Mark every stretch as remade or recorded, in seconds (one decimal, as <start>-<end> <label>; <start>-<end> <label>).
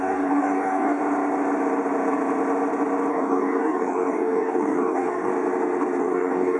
0.0-1.0 remade; 1.0-3.1 recorded; 3.1-5.3 remade; 5.3-6.0 recorded; 6.0-6.6 remade